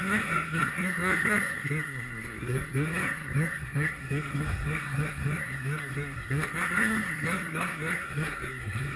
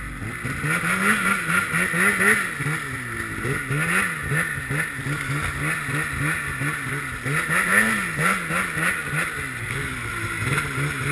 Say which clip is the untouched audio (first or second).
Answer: second